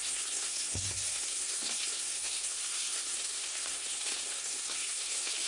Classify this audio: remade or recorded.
remade